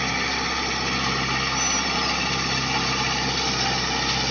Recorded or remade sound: recorded